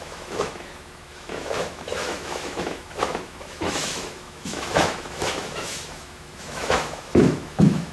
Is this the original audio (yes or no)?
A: no